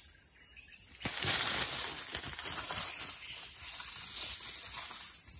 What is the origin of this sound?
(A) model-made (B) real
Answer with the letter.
B